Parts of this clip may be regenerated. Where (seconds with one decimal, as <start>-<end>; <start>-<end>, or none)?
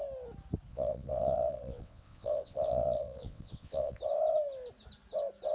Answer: 0.7-4.0